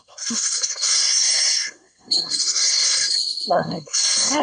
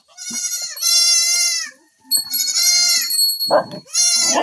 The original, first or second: second